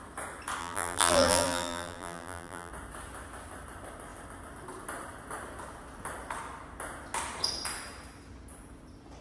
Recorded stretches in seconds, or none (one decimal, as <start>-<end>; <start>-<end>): 0.0-0.6; 2.7-9.2